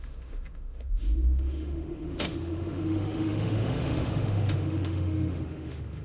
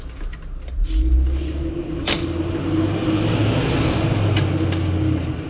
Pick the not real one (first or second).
first